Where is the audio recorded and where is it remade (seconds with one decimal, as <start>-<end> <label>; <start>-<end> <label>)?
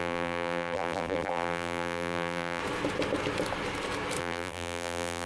0.0-2.6 remade; 2.6-4.2 recorded; 4.2-5.3 remade